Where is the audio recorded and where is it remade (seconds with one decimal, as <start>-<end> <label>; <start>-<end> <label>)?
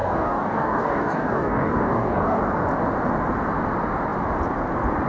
0.0-2.4 remade; 2.4-5.1 recorded